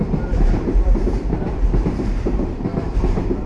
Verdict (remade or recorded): remade